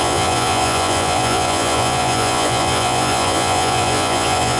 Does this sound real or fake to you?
fake